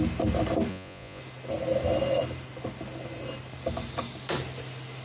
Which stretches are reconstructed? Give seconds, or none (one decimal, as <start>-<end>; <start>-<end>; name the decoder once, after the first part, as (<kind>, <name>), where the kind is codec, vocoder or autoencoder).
0.7-1.2 (vocoder, Vocos)